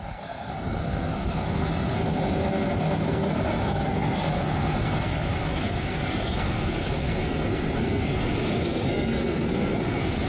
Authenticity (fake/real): fake